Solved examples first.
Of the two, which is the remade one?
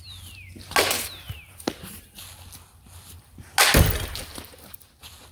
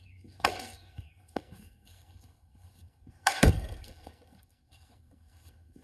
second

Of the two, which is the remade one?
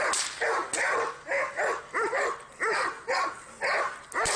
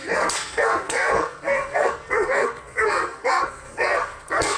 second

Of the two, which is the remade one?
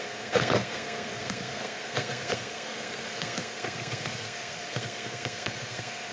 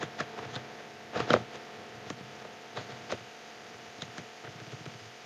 first